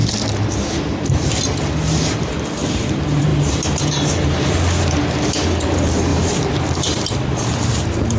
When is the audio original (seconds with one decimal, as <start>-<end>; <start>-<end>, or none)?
0.0-1.0